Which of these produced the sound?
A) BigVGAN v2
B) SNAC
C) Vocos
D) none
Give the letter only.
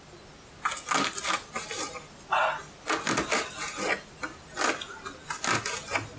D